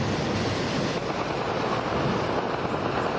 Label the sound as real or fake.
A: real